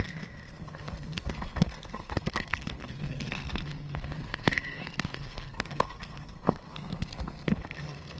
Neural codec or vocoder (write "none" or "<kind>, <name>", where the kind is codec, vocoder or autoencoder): codec, SNAC